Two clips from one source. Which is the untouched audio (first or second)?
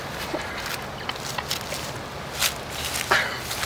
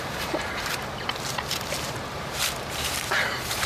first